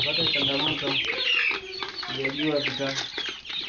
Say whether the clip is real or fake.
real